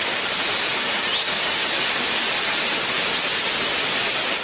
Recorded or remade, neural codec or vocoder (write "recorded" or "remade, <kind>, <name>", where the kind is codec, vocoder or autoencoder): recorded